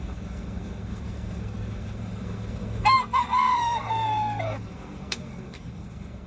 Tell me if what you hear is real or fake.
fake